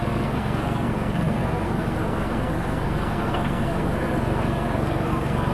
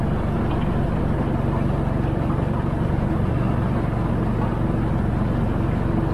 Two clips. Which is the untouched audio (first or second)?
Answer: second